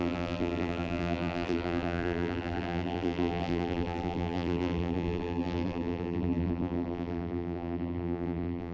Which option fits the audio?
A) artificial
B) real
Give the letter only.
A